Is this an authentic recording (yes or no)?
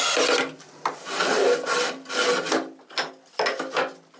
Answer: yes